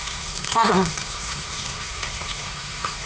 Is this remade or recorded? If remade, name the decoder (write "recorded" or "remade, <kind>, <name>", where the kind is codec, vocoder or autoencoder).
remade, codec, SNAC